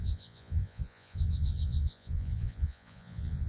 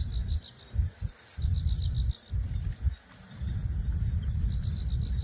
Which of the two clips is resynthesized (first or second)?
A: first